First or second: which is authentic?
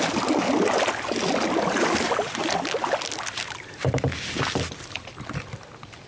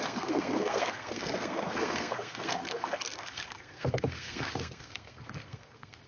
first